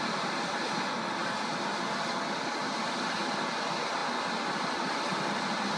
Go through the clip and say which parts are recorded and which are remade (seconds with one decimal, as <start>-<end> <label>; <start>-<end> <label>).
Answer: 0.0-5.8 recorded